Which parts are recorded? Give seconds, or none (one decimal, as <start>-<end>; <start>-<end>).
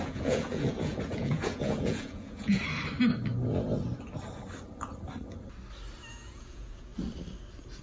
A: 2.6-6.1; 6.9-7.8